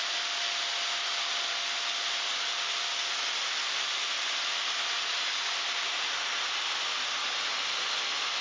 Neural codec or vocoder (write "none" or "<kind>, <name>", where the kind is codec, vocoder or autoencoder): none